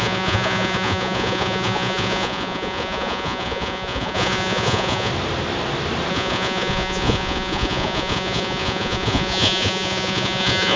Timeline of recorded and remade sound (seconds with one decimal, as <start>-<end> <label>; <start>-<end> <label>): 0.0-5.1 remade; 5.1-6.1 recorded; 6.1-10.8 remade